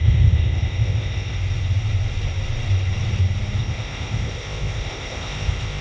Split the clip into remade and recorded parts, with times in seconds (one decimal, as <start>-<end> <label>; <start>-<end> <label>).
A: 0.0-1.4 remade; 1.4-3.6 recorded; 3.6-5.8 remade